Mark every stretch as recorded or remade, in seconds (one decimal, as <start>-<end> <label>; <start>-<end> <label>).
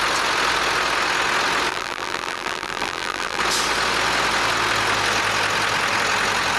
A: 0.0-1.7 recorded; 1.7-3.4 remade; 3.4-6.6 recorded